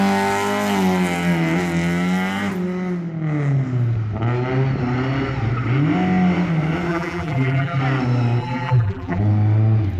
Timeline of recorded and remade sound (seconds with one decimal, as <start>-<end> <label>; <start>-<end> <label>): 0.0-6.9 recorded; 6.9-7.8 remade; 7.8-8.4 recorded; 8.4-9.2 remade; 9.2-10.0 recorded